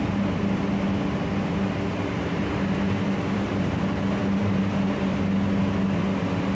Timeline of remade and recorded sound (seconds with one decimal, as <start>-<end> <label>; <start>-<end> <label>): 0.0-0.6 remade; 0.6-1.6 recorded; 1.6-3.8 remade; 3.8-4.2 recorded; 4.2-5.2 remade; 5.2-6.5 recorded